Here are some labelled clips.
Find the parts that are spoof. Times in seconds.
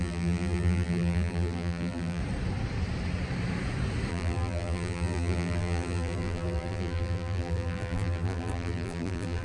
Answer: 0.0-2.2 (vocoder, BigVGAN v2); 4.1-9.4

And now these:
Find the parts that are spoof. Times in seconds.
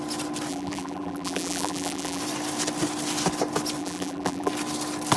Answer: 0.5-2.2 (vocoder, BigVGAN v2); 3.8-4.5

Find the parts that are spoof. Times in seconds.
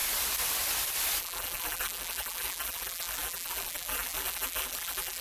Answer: 1.2-5.2 (vocoder, BigVGAN v2)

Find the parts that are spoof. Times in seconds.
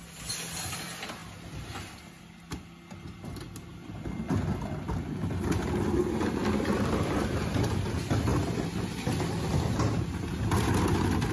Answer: none